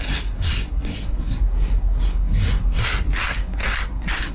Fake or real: fake